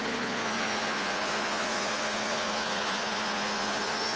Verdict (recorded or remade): remade